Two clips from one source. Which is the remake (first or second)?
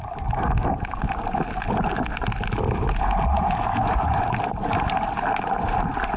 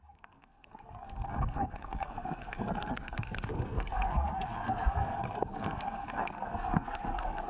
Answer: second